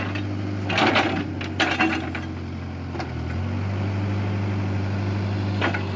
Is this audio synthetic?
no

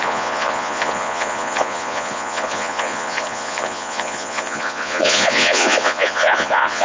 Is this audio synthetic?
yes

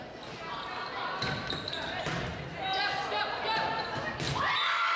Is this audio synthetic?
no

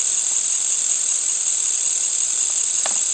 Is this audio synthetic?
yes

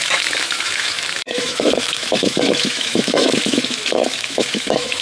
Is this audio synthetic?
yes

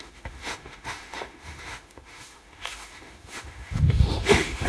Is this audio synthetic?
yes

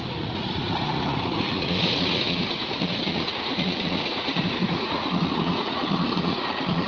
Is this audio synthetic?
yes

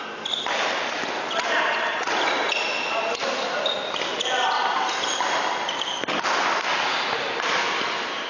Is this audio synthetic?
no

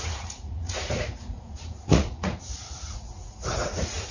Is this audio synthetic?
yes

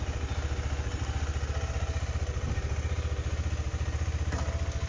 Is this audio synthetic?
no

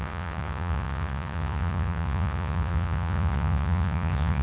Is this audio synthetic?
yes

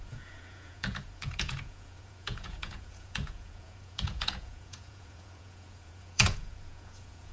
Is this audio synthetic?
yes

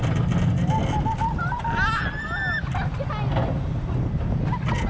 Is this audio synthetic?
no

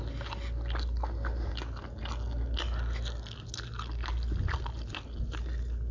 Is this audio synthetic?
no